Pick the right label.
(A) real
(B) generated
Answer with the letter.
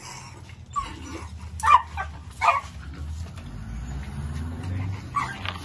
A